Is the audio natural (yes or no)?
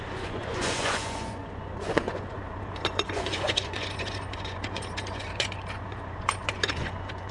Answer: no